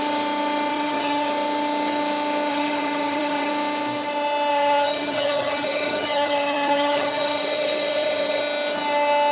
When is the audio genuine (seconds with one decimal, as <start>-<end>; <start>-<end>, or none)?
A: 0.0-0.7; 1.3-2.5; 3.5-4.5; 8.4-9.3